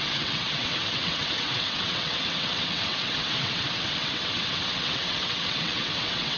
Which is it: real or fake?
fake